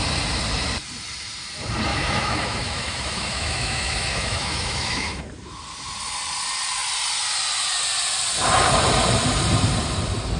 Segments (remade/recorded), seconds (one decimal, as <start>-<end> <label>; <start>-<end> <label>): 0.0-1.9 recorded; 1.9-5.2 remade; 5.2-10.4 recorded